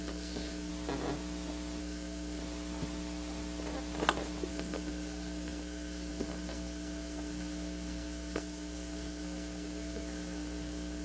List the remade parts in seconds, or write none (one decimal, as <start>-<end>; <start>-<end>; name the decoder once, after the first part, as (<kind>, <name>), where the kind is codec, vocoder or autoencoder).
0.0-0.7 (codec, SNAC); 1.8-2.4; 4.5-11.0